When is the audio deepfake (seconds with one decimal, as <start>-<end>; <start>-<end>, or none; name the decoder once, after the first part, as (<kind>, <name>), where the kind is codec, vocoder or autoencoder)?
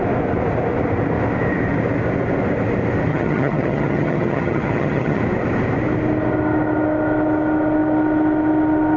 3.1-5.2 (vocoder, HiFi-GAN)